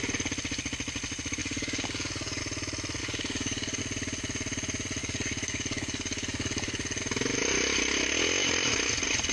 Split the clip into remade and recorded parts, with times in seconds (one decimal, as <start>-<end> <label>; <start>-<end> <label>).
0.0-1.4 recorded; 1.4-2.4 remade; 2.4-3.0 recorded; 3.0-3.8 remade; 3.8-5.0 recorded; 5.0-7.0 remade; 7.0-9.3 recorded